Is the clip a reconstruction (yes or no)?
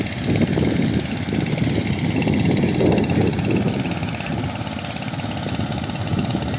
no